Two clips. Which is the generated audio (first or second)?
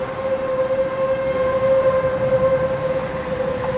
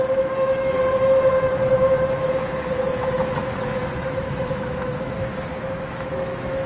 second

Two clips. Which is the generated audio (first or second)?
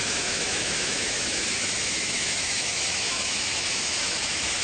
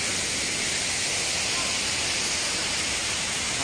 first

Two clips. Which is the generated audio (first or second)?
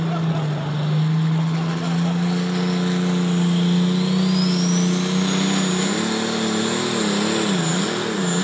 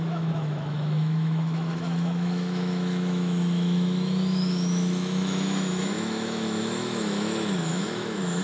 second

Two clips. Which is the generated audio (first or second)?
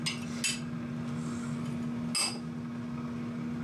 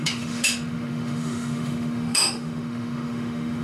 second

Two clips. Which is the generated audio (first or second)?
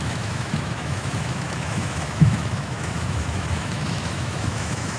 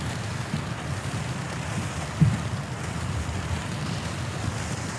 first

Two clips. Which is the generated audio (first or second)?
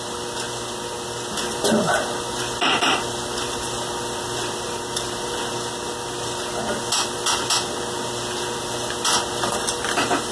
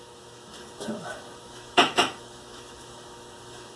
second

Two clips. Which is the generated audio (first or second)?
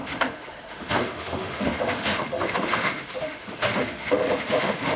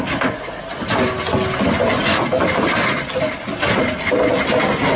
first